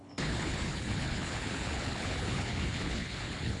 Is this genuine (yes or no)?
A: no